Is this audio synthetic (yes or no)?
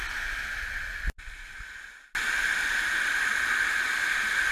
no